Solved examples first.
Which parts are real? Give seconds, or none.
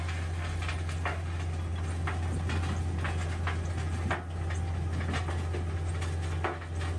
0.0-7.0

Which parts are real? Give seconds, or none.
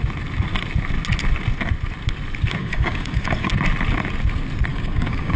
0.0-2.6; 3.5-4.7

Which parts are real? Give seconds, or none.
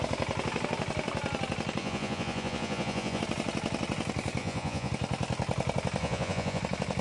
0.0-1.8; 3.2-4.4; 4.9-6.0; 6.6-7.0